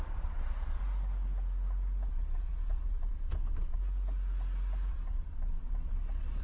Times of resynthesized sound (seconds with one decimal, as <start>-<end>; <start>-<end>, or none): 0.0-0.8; 2.1-3.8; 4.9-6.4